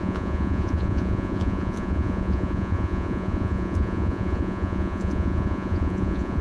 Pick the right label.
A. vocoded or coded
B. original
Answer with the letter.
A